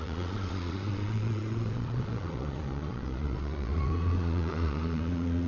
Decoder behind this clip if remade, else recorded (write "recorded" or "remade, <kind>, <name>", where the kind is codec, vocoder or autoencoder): remade, vocoder, Vocos